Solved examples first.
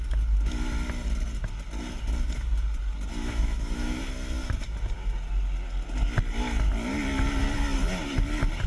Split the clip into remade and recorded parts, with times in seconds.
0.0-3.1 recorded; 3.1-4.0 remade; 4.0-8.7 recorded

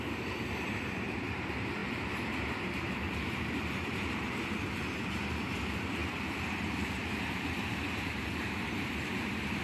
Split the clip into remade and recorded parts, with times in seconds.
0.0-9.6 remade

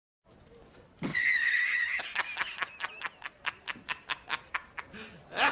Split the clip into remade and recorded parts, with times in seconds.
0.0-1.1 recorded; 1.1-2.0 remade; 2.0-5.5 recorded

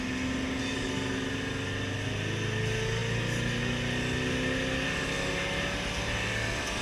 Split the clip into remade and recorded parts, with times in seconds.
0.0-6.8 recorded

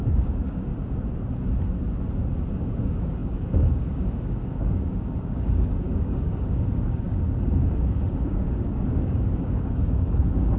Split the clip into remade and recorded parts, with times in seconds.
0.0-0.7 remade; 0.7-2.5 recorded; 2.5-10.6 remade

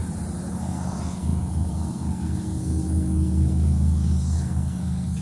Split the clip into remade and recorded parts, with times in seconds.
0.0-0.5 recorded; 0.5-5.2 remade

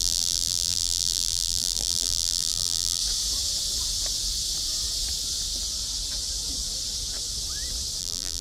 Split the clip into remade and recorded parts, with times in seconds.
0.0-3.0 remade; 3.0-8.0 recorded; 8.0-8.4 remade

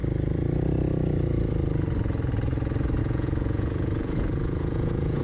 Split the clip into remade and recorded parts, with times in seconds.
0.0-3.0 recorded; 3.0-5.2 remade